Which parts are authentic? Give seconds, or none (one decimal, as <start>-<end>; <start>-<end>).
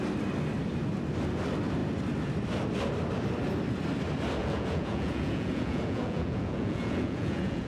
0.0-4.4